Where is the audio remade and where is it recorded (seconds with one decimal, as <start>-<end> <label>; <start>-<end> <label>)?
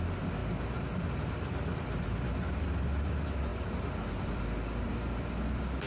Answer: 0.0-0.4 recorded; 0.4-2.7 remade; 2.7-3.5 recorded; 3.5-5.9 remade